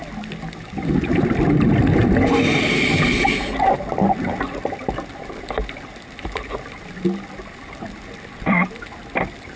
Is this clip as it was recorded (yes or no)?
yes